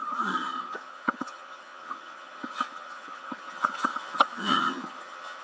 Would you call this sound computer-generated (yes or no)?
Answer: yes